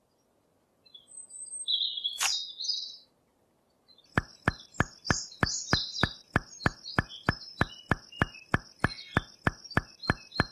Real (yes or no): yes